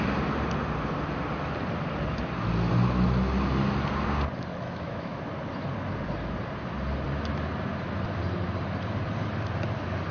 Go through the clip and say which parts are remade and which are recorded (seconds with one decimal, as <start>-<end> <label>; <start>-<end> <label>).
0.0-4.5 recorded; 4.5-5.2 remade; 5.2-10.1 recorded